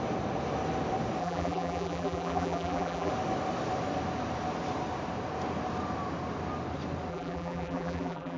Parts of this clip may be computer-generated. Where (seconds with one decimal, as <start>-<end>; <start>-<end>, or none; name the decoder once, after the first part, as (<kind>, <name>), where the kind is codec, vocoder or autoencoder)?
1.2-3.1 (vocoder, BigVGAN v2); 7.1-8.4